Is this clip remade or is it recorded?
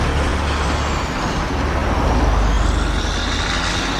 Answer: recorded